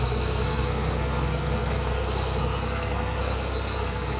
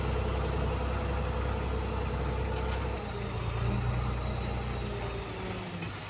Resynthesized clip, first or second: first